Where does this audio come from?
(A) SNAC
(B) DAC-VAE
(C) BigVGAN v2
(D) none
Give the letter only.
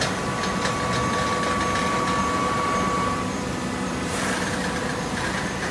D